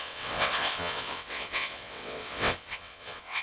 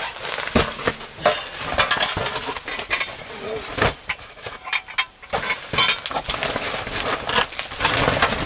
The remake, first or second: first